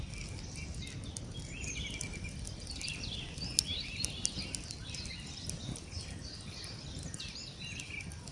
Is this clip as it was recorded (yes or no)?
yes